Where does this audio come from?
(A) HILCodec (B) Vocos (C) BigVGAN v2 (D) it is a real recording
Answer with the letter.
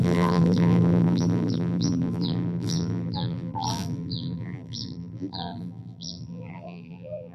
C